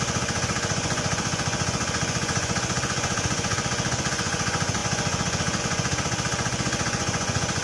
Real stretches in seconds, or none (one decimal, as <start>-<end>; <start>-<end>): none